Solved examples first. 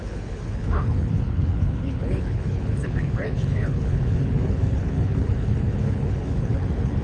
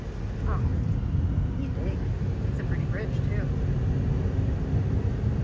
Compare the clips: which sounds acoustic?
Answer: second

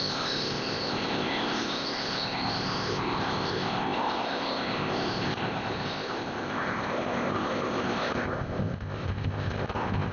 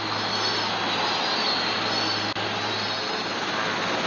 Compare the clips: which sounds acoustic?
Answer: second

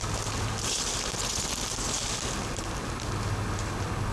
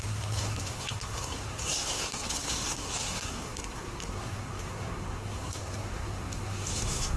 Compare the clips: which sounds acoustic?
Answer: first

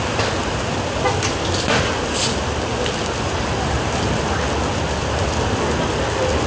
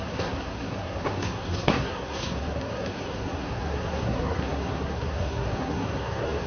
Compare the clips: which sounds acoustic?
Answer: first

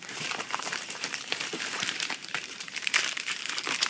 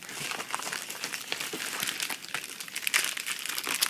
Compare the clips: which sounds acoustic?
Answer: second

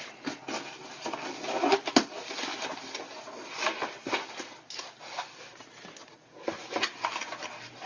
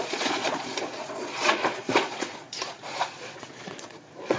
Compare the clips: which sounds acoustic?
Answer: first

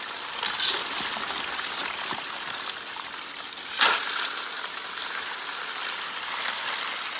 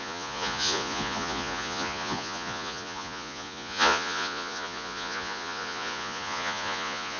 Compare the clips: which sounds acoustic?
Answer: first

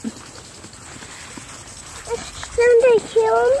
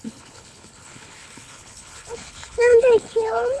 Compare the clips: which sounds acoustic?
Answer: first